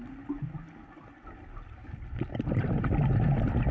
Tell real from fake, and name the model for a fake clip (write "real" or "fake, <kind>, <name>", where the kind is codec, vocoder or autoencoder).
real